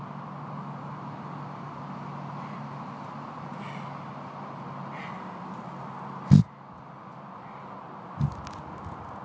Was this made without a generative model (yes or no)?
yes